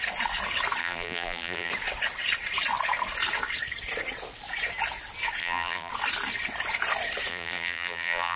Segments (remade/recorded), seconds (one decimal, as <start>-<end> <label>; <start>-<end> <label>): 0.0-0.8 recorded; 0.8-1.7 remade; 1.7-5.4 recorded; 5.4-5.9 remade; 5.9-7.3 recorded; 7.3-8.4 remade